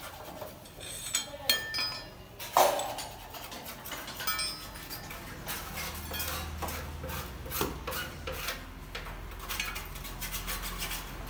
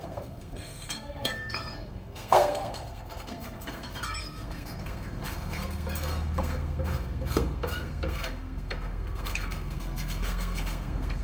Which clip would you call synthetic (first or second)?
second